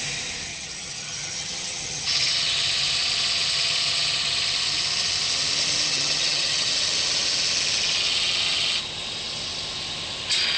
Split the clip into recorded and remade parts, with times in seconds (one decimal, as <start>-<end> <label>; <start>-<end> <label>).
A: 0.0-0.5 recorded; 0.5-2.3 remade; 2.3-5.9 recorded; 5.9-6.7 remade; 6.7-10.6 recorded